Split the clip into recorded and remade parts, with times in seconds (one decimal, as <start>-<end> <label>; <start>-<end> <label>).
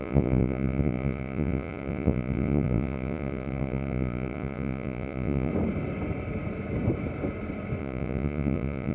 0.0-5.5 remade; 5.5-7.8 recorded; 7.8-8.9 remade